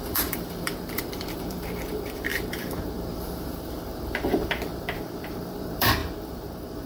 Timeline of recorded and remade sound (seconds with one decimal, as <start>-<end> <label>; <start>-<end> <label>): 0.0-6.9 remade